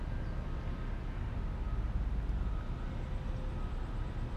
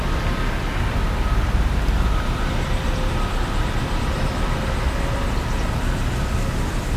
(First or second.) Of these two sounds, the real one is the first